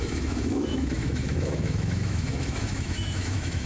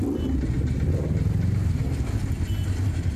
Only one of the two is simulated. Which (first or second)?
first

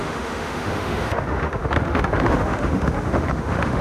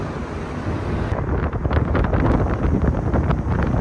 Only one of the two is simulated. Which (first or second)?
first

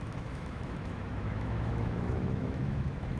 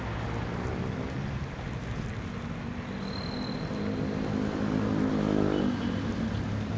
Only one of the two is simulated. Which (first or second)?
first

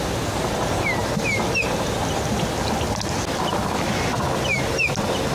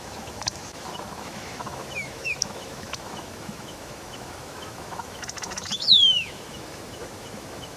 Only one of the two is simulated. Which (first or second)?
second